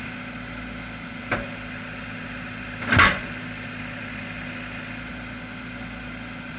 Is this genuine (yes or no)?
yes